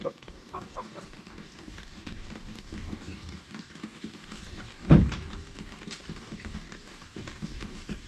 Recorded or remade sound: remade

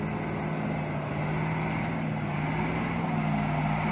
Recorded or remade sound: recorded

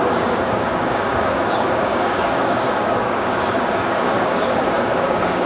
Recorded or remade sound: remade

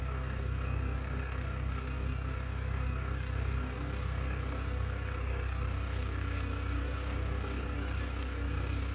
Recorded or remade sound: remade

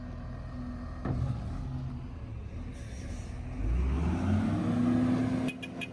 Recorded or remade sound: recorded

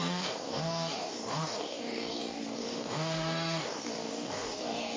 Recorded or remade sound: remade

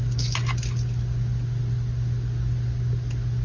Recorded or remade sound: recorded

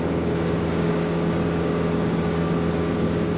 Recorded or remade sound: remade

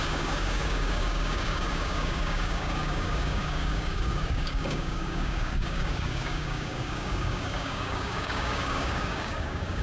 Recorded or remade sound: remade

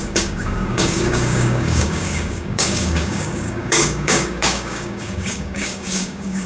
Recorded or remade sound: remade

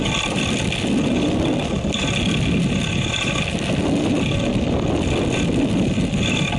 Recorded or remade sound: recorded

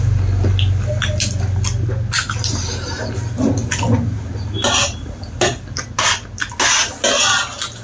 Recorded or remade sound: recorded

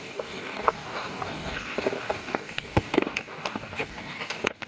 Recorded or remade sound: remade